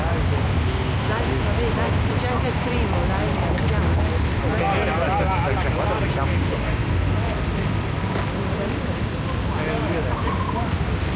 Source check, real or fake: real